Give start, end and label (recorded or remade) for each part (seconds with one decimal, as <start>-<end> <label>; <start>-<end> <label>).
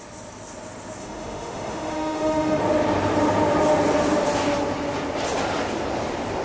0.0-1.0 recorded; 1.0-2.6 remade; 2.6-6.4 recorded